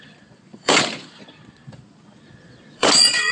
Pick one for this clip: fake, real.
fake